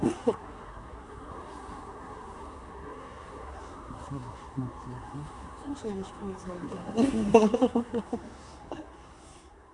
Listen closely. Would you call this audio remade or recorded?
remade